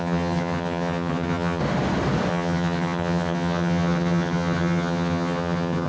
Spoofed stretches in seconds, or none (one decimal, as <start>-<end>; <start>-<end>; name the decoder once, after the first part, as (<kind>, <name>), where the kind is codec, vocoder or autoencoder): 0.0-1.6 (vocoder, HiFi-GAN); 2.3-5.9